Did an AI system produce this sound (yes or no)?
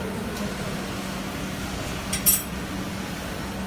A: no